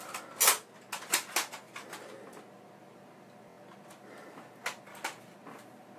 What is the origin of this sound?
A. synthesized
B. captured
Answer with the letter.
B